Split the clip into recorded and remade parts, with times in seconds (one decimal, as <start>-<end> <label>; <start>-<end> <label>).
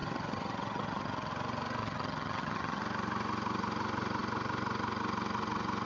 0.0-1.3 remade; 1.3-1.8 recorded; 1.8-2.8 remade; 2.8-5.9 recorded